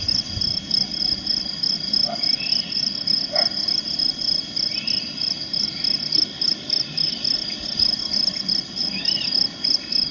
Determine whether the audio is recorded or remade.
recorded